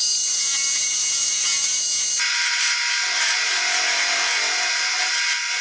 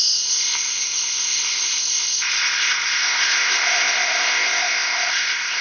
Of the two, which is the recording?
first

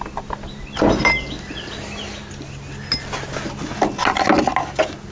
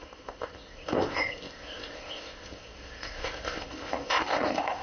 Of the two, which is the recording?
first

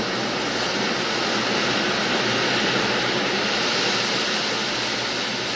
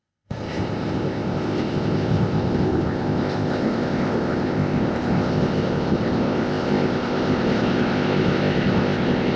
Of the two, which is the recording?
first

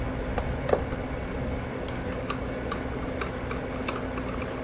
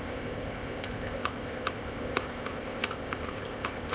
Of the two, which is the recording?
first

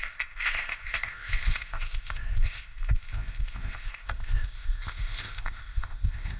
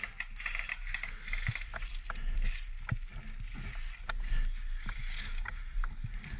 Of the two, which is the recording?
second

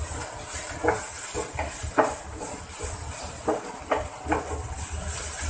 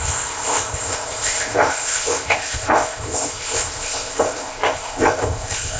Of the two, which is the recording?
first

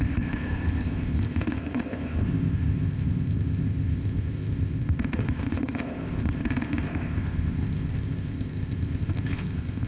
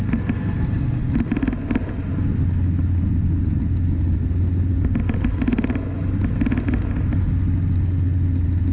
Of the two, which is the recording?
second